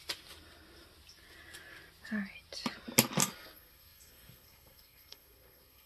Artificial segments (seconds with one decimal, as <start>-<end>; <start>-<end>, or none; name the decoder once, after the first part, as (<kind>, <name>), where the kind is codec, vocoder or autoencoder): 3.2-5.9 (codec, SNAC)